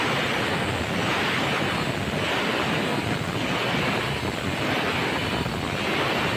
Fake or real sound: real